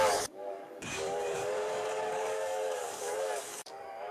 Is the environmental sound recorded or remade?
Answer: remade